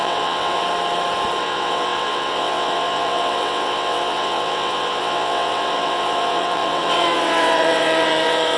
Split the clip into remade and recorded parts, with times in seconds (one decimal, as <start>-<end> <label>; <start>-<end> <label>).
0.0-0.6 remade; 0.6-1.4 recorded; 1.4-8.6 remade